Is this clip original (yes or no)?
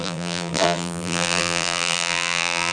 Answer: no